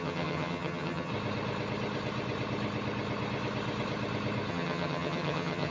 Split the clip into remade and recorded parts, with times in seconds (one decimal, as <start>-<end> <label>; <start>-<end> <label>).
0.0-1.1 remade; 1.1-4.5 recorded; 4.5-5.7 remade